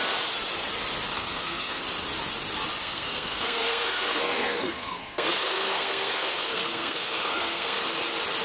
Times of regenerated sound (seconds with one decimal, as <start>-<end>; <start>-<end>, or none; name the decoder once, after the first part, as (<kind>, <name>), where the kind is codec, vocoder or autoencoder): 1.1-1.8 (codec, SNAC); 2.8-7.8